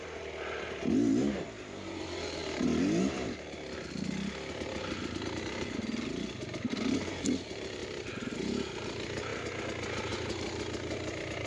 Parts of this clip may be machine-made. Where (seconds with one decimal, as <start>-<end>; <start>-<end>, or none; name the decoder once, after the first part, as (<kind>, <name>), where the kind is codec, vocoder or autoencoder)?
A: 7.8-8.7 (vocoder, BigVGAN v2)